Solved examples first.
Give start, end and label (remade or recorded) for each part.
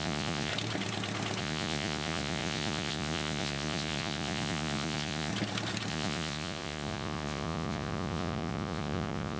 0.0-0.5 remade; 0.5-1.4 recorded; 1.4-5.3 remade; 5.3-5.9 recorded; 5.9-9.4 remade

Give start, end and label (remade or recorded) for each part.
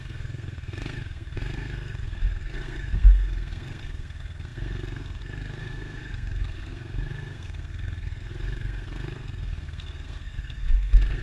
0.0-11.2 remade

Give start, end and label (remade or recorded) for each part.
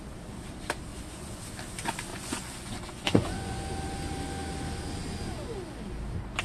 0.0-0.9 recorded; 0.9-1.4 remade; 1.4-2.1 recorded; 2.1-3.6 remade; 3.6-6.4 recorded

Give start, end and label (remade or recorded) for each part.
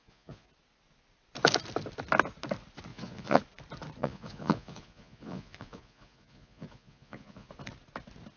0.0-0.5 remade; 0.5-2.9 recorded; 2.9-3.4 remade; 3.4-4.0 recorded; 4.0-7.5 remade; 7.5-8.4 recorded